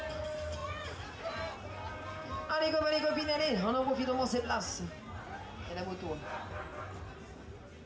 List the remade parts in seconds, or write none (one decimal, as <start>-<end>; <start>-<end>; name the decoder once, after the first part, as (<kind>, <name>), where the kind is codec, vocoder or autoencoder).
0.6-1.2 (vocoder, Vocos)